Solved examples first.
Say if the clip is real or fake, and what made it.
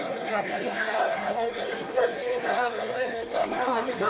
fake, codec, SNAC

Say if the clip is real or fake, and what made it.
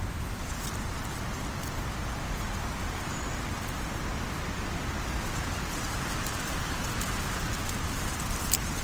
real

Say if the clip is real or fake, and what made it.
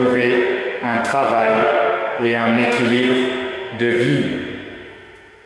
fake, autoencoder, DAC-VAE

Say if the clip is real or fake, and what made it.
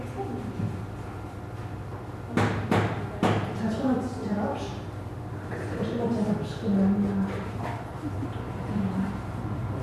real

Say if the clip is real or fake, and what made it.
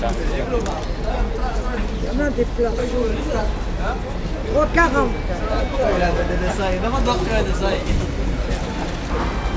real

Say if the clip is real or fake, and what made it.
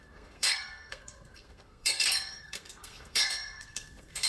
fake, codec, SNAC